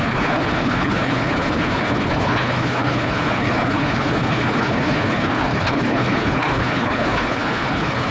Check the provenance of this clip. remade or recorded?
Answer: remade